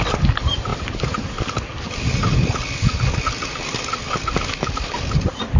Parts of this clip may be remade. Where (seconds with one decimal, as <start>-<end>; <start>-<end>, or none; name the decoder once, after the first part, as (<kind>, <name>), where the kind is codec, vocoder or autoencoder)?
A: none